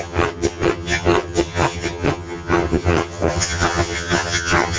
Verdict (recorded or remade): remade